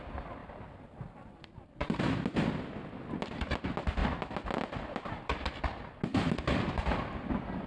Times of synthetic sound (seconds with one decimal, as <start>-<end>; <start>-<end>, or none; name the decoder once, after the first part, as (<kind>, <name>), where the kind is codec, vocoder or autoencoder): 0.4-2.0 (vocoder, BigVGAN v2); 4.0-4.6; 6.1-6.8